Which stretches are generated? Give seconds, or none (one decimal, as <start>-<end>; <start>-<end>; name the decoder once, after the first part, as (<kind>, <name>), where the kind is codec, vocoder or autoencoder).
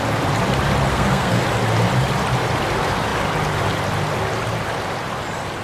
0.9-1.4 (codec, SNAC)